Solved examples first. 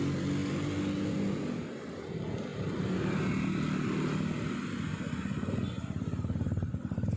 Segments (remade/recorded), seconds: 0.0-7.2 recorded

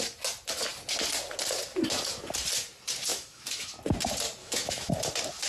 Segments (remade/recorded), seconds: 0.0-3.1 recorded; 3.1-3.8 remade; 3.8-4.4 recorded; 4.4-4.9 remade; 4.9-5.5 recorded

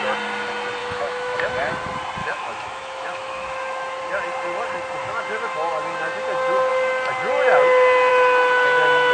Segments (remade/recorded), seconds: 0.0-0.8 recorded; 0.8-1.4 remade; 1.4-2.2 recorded; 2.2-4.0 remade; 4.0-5.0 recorded; 5.0-5.7 remade; 5.7-9.1 recorded

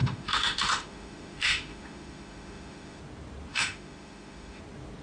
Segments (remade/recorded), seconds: 0.0-3.0 remade; 3.0-3.5 recorded; 3.5-4.6 remade; 4.6-5.0 recorded

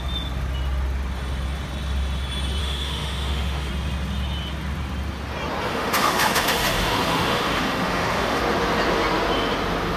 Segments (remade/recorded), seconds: 0.0-2.6 recorded; 2.6-3.7 remade; 3.7-5.7 recorded; 5.7-8.4 remade; 8.4-10.0 recorded